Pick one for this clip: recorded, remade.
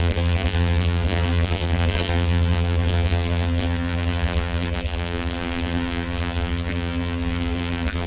remade